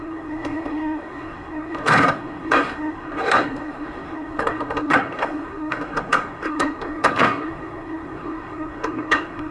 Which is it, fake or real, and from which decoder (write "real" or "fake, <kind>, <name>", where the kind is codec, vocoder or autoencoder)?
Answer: fake, codec, SNAC